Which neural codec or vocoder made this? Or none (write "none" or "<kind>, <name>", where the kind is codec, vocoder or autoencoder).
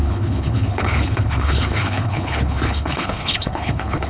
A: codec, HILCodec